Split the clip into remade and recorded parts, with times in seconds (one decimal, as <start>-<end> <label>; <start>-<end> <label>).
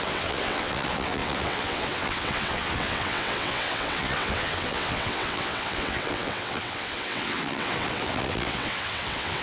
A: 0.0-9.4 remade